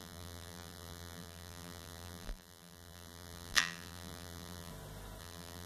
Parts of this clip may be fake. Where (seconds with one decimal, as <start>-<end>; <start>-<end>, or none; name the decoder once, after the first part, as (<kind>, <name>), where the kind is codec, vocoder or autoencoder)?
0.0-4.7 (vocoder, BigVGAN v2); 5.2-5.7